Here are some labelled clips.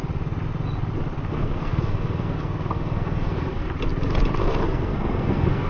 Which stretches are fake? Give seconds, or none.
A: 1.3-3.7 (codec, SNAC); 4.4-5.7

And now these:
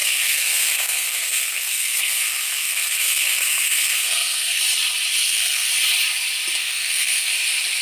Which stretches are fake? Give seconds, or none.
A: 0.0-4.6 (codec, SNAC); 5.2-5.7; 6.6-7.3

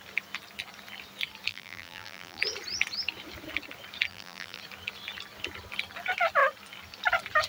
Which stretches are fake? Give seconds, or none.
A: 1.5-2.4 (vocoder, BigVGAN v2); 4.1-4.6

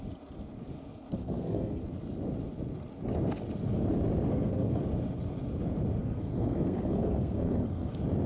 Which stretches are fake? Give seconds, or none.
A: 1.2-1.8 (codec, SNAC); 4.3-4.8; 6.0-7.9

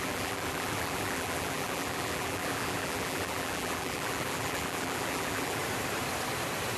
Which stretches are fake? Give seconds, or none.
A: 0.0-5.6 (vocoder, BigVGAN v2)

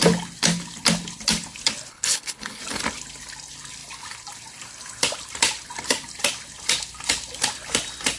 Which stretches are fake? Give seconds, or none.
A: 1.9-2.6 (codec, HILCodec)

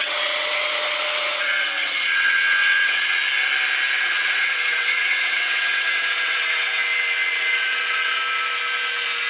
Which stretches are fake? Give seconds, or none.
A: 0.0-3.2 (vocoder, WaveNeXt); 4.0-8.2